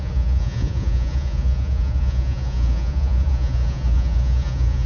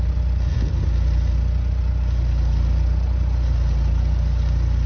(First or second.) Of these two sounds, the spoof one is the first